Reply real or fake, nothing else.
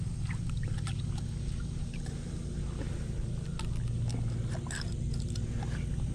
real